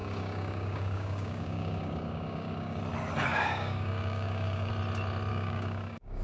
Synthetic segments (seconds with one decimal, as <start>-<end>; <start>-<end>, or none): 0.0-2.8; 3.3-4.7; 5.3-6.2